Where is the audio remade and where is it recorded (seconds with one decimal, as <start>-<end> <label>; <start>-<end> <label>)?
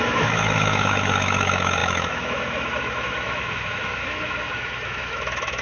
0.0-5.6 remade